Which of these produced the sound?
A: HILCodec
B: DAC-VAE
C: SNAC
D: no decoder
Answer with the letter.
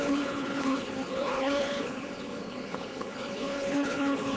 A